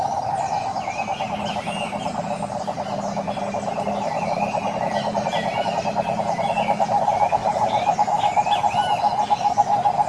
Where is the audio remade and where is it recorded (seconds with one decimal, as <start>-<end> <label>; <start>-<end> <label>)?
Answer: 0.0-10.1 recorded